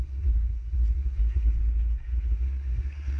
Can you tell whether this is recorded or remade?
remade